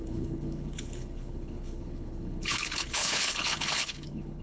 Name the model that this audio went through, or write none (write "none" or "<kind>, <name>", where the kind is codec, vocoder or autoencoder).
codec, HILCodec